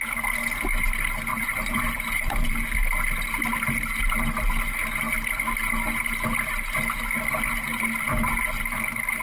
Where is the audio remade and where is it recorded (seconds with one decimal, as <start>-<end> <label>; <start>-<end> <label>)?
0.0-1.3 recorded; 1.3-2.5 remade; 2.5-9.2 recorded